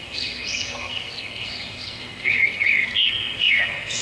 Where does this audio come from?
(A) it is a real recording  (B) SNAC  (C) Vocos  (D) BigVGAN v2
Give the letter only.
B